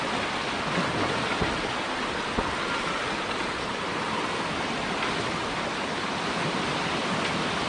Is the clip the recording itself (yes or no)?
yes